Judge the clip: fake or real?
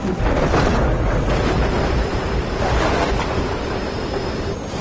real